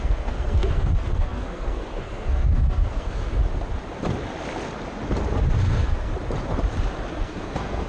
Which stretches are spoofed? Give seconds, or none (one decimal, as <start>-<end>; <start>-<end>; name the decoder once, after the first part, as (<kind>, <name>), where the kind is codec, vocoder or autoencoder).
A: 0.0-3.4 (codec, SNAC); 5.6-6.1; 7.1-7.9